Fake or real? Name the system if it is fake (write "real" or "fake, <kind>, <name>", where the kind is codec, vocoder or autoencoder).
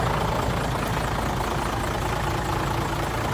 real